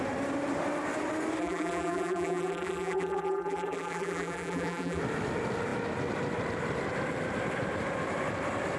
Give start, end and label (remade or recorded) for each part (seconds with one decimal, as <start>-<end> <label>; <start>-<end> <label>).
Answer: 0.0-1.4 recorded; 1.4-5.0 remade; 5.0-8.8 recorded